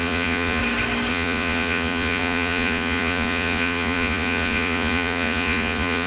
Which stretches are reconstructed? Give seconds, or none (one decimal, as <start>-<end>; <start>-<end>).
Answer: 0.0-0.6; 1.1-6.1